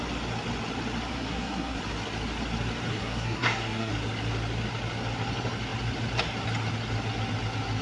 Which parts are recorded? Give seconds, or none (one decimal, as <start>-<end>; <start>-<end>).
0.0-1.1; 1.8-2.9; 3.9-7.8